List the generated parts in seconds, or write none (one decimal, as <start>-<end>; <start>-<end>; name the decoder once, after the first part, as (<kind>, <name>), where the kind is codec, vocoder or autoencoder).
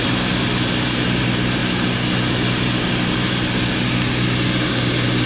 none